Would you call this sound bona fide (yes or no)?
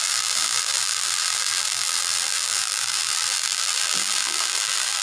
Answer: no